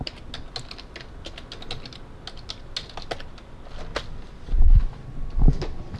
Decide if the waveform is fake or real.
real